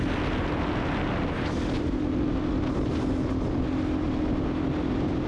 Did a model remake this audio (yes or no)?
no